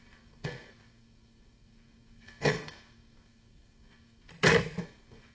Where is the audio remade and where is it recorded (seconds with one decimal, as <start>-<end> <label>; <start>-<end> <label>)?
0.0-4.3 remade; 4.3-4.8 recorded; 4.8-5.3 remade